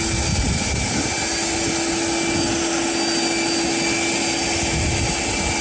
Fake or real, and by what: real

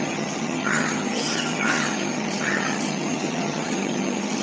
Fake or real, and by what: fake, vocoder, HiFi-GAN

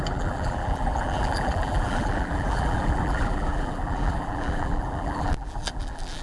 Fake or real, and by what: fake, vocoder, BigVGAN v2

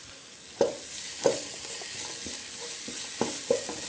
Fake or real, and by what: real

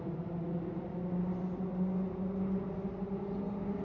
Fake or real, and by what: real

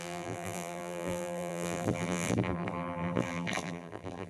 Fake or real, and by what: fake, vocoder, BigVGAN v2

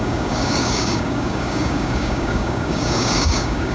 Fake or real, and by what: fake, codec, DAC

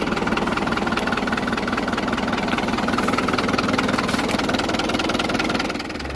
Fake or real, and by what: real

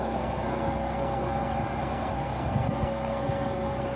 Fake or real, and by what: fake, codec, SNAC